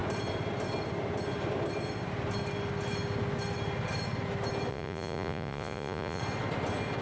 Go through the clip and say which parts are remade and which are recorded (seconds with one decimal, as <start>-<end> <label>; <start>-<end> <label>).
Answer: 0.0-4.7 recorded; 4.7-6.2 remade; 6.2-7.0 recorded